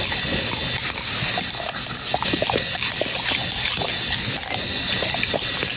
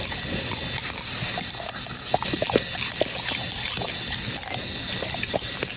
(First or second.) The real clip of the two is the second